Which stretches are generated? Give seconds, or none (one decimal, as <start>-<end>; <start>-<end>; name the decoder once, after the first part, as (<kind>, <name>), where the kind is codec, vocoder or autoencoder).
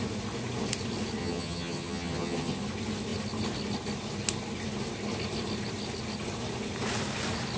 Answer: 1.2-2.6 (vocoder, HiFi-GAN)